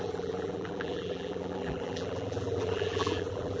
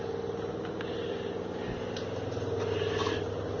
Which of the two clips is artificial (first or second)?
first